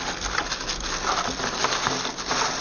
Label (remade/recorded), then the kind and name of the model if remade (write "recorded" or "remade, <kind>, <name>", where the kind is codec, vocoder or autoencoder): recorded